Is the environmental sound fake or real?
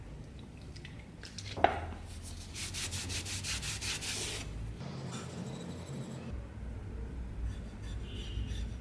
real